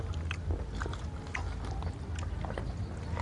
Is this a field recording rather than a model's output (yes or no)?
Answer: yes